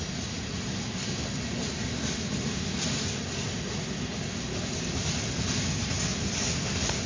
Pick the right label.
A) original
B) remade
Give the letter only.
A